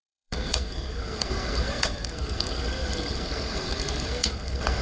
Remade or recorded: remade